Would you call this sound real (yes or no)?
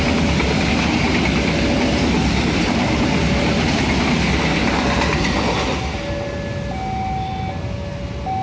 yes